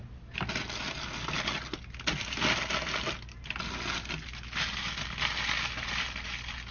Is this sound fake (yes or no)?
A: no